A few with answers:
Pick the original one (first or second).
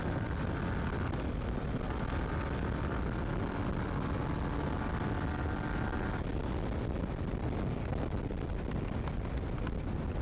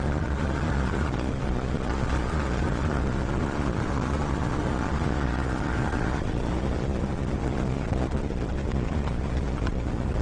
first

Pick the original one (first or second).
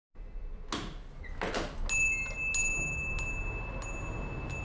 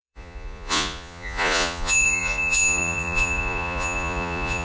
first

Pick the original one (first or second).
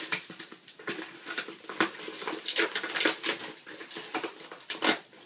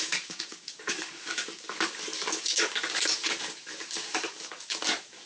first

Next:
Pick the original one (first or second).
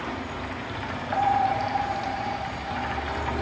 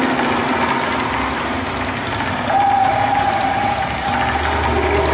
second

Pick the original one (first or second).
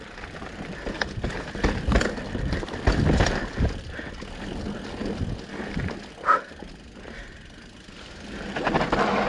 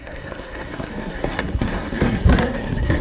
first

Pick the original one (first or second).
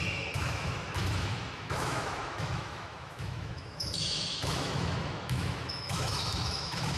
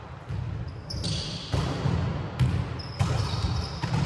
second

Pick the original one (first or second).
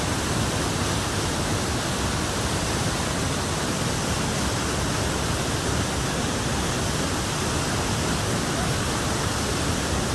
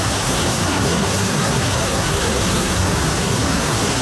first